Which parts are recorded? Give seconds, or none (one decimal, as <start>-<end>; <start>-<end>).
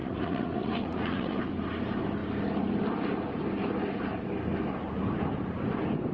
1.4-6.1